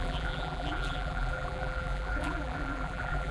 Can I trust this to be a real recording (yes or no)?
no